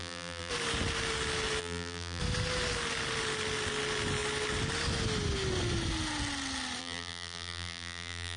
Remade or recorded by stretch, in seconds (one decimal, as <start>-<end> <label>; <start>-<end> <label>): 0.0-0.5 remade; 0.5-1.6 recorded; 1.6-2.2 remade; 2.2-6.8 recorded; 6.8-8.4 remade